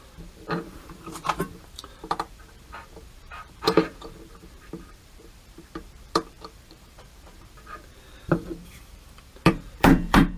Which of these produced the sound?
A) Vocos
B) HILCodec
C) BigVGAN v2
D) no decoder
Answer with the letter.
C